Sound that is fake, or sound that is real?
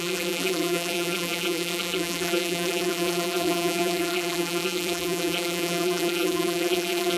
fake